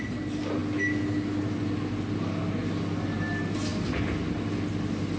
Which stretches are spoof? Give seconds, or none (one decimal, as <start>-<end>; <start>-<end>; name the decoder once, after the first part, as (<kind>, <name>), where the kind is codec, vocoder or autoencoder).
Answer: none